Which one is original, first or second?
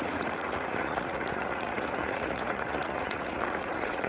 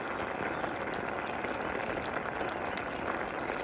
second